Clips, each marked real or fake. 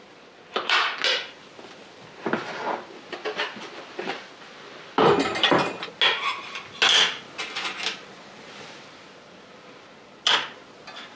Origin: real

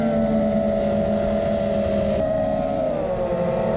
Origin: real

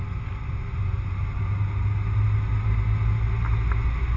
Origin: real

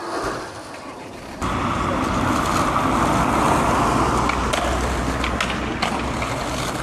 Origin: real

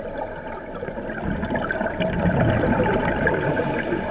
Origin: real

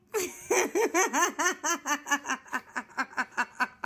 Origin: real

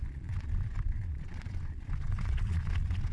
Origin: fake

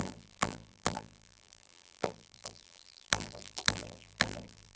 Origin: fake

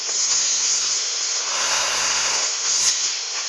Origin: fake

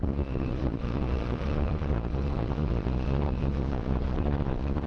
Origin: fake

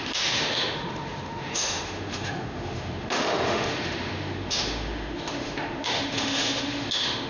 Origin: fake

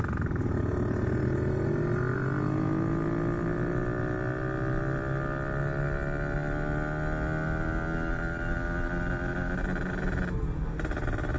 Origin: real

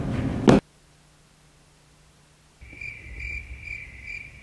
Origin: real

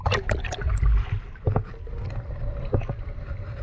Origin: real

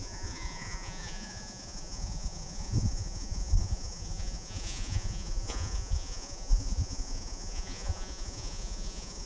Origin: fake